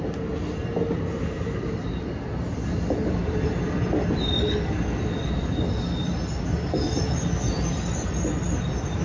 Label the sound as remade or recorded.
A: recorded